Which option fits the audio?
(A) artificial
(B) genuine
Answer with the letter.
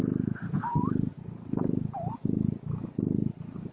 B